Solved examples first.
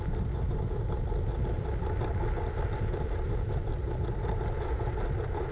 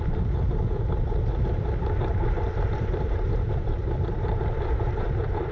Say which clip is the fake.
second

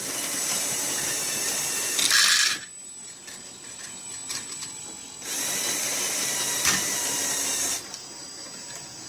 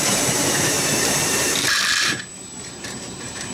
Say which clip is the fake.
second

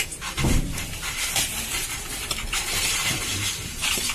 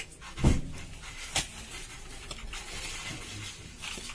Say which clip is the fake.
first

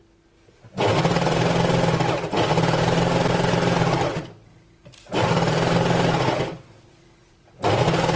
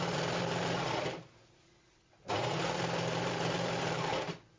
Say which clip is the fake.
second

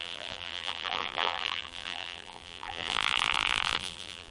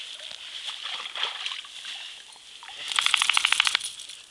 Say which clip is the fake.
first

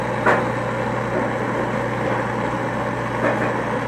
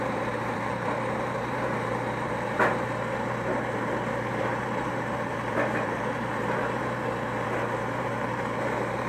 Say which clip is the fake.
second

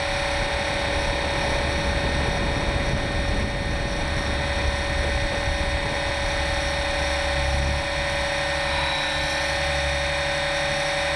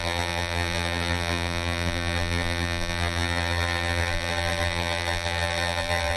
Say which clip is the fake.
second